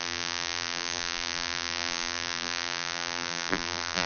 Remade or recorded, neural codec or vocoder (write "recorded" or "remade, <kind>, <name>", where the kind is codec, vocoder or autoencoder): remade, vocoder, BigVGAN v2